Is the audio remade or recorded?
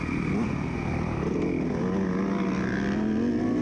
recorded